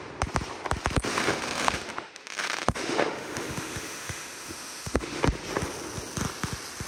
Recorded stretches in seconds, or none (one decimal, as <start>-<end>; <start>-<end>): 0.0-1.1; 5.2-6.9